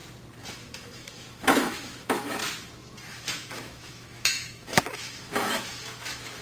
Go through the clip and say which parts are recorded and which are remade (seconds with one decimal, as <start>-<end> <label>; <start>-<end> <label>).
0.0-0.5 recorded; 0.5-2.4 remade; 2.4-3.1 recorded; 3.1-6.4 remade